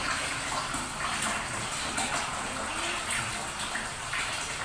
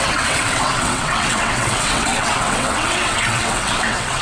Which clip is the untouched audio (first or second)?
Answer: first